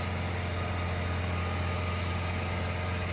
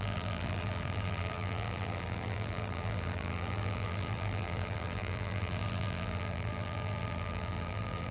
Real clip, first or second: first